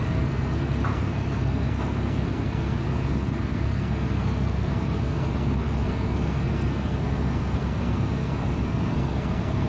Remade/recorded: remade